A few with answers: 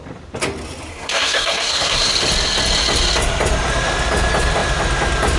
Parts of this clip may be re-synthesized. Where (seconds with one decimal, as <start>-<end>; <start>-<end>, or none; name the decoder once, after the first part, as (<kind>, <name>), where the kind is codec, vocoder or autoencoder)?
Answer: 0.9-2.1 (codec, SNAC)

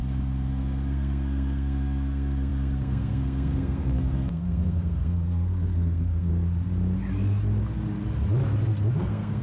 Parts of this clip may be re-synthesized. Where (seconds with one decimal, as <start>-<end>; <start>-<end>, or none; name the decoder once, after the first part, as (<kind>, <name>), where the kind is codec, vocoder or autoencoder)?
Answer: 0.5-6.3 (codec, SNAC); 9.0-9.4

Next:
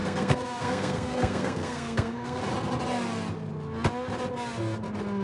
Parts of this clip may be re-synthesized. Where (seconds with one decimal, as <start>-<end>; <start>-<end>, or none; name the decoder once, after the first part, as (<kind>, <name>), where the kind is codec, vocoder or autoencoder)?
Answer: 0.0-2.4 (codec, SNAC)

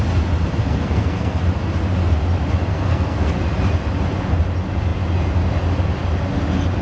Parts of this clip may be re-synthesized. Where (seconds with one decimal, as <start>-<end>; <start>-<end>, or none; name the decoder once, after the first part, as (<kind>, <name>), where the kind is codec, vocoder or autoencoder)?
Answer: 0.6-1.4 (codec, SNAC); 2.7-3.3